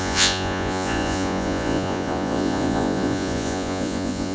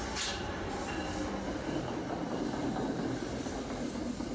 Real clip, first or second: second